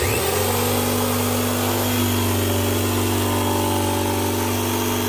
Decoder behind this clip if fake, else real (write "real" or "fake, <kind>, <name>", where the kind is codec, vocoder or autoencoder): real